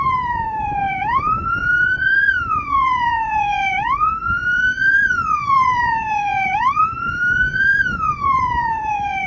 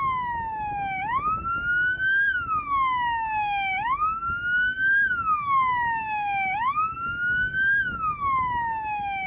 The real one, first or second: second